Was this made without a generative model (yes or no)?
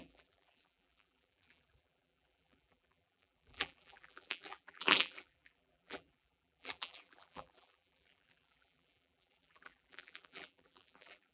no